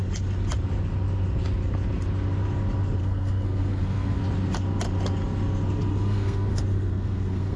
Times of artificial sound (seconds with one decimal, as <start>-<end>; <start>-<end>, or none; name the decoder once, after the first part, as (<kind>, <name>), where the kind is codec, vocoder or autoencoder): 3.0-4.2 (codec, SNAC); 5.9-7.6